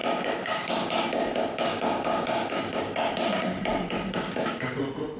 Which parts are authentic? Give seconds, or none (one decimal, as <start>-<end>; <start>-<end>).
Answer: 3.1-3.7; 4.8-5.2